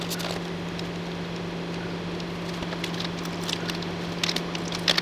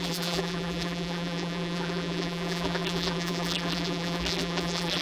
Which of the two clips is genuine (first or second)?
first